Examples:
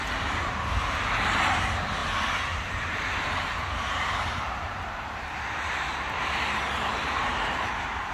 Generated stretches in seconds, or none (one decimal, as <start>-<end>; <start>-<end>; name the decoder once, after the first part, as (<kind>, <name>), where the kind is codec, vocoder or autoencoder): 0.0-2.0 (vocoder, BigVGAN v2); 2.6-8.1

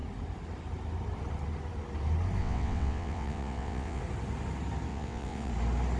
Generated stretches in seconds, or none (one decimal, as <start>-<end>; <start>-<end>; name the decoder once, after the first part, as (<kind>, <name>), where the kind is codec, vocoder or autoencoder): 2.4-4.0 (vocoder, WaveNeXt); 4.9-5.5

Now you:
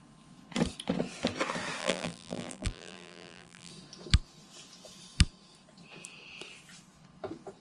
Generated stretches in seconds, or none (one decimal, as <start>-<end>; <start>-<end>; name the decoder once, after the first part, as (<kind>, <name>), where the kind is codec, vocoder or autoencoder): 1.8-3.7 (vocoder, BigVGAN v2)

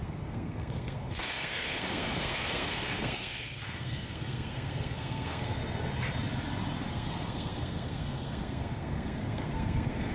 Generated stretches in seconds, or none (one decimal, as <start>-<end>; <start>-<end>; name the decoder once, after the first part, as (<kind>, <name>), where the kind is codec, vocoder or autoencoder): 0.0-5.6 (codec, SNAC); 6.9-10.1

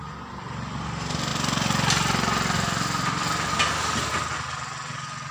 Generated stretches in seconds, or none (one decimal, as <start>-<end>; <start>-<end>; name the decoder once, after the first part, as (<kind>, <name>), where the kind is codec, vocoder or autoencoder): none

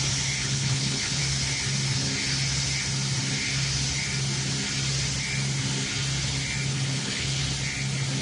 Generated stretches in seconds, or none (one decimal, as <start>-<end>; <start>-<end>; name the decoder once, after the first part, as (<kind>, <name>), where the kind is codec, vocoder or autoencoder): 0.4-1.2 (codec, HILCodec); 6.7-7.4

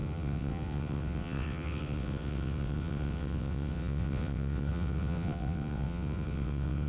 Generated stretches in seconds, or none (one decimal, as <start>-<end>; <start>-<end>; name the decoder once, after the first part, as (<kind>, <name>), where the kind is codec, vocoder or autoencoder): 0.0-6.9 (vocoder, WaveNeXt)